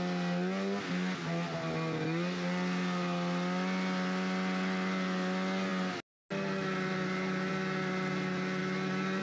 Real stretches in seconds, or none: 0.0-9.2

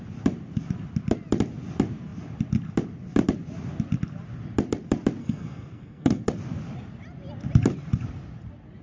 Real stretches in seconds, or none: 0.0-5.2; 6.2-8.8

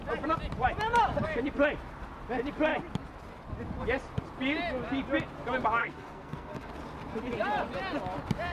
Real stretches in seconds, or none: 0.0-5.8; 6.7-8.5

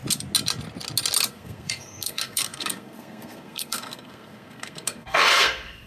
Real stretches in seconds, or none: 0.0-1.3

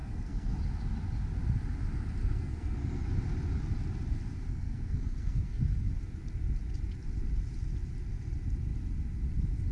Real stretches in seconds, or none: 0.6-2.2; 3.1-4.5; 5.9-9.7

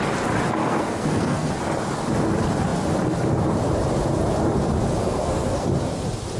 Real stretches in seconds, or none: 0.0-0.6; 1.5-5.0; 5.7-6.4